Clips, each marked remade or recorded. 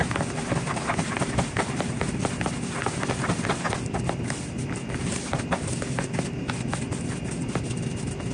remade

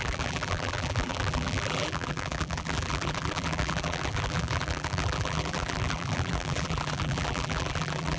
remade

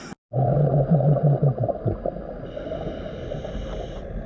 recorded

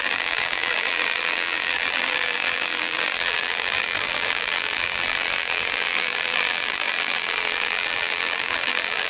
remade